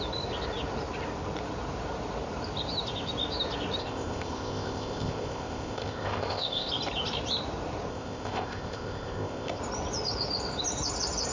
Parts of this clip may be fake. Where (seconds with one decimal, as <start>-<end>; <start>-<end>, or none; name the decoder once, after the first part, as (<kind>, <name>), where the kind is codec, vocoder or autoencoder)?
3.8-6.7 (codec, ZipCodec); 7.9-9.6